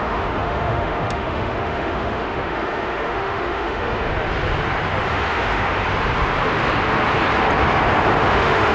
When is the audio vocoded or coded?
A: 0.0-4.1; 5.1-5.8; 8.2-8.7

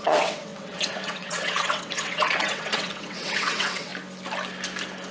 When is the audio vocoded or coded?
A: 0.0-3.9

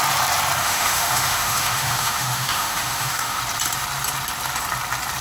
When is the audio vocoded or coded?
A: 0.6-3.4